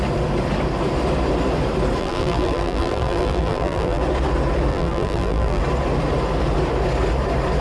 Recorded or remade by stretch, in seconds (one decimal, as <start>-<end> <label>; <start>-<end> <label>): 0.0-2.0 recorded; 2.0-4.0 remade; 4.0-4.7 recorded; 4.7-5.6 remade; 5.6-7.6 recorded